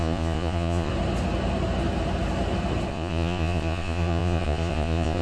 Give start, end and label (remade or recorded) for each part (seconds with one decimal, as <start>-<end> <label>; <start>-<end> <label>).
0.0-0.9 remade; 0.9-2.9 recorded; 2.9-5.2 remade